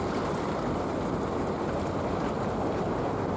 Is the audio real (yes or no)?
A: yes